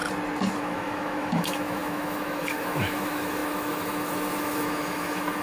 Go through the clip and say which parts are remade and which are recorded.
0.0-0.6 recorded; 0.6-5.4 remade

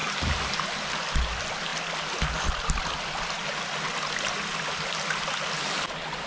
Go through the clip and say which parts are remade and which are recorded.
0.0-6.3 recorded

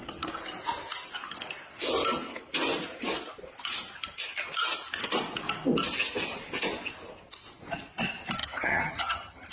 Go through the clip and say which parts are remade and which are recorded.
0.0-8.4 recorded; 8.4-9.5 remade

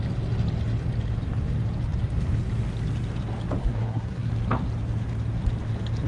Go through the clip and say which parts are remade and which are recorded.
0.0-3.6 recorded; 3.6-4.3 remade; 4.3-6.1 recorded

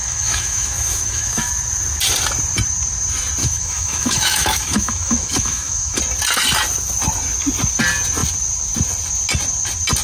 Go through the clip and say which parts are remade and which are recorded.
0.0-1.5 remade; 1.5-3.4 recorded; 3.4-6.0 remade; 6.0-10.0 recorded

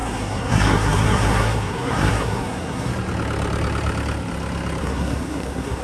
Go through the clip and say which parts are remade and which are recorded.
0.0-2.9 remade; 2.9-4.8 recorded; 4.8-5.8 remade